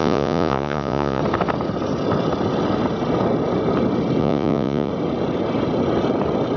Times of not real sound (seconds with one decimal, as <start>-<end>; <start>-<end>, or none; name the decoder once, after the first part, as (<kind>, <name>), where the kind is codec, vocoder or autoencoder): 0.0-1.2 (vocoder, Vocos); 4.2-4.9